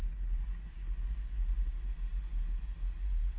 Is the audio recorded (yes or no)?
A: yes